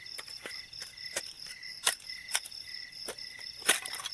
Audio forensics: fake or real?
fake